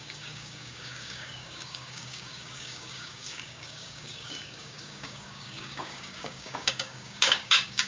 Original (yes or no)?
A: no